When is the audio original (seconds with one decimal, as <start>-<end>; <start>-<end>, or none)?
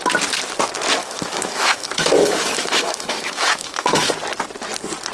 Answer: 0.0-1.0; 4.1-5.1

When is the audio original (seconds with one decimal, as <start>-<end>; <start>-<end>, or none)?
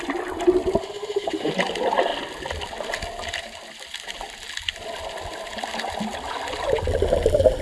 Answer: 0.0-0.8; 1.5-7.6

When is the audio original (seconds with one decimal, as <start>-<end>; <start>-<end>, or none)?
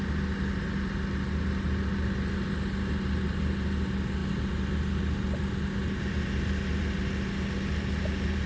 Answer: 0.0-8.5